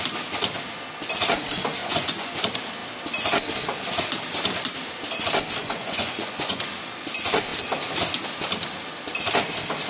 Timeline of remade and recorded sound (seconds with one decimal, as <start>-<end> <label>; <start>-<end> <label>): 0.0-1.8 recorded; 1.8-2.4 remade; 2.4-5.6 recorded; 5.6-6.6 remade; 6.6-9.9 recorded